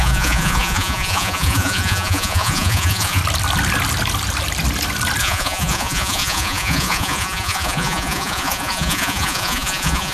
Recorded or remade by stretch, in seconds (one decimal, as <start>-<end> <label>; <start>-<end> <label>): 0.0-3.2 remade; 3.2-5.2 recorded; 5.2-10.1 remade